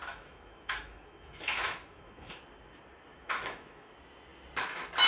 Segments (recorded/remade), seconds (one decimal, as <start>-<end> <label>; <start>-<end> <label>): 0.0-2.4 remade; 2.4-3.1 recorded; 3.1-3.9 remade; 3.9-5.1 recorded